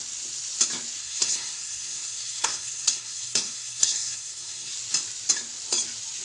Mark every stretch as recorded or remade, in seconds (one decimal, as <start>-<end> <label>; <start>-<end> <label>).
0.0-1.0 recorded; 1.0-4.7 remade; 4.7-6.2 recorded